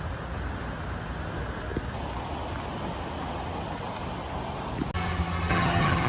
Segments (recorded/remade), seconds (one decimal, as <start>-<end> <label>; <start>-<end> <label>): 0.0-5.5 recorded; 5.5-6.1 remade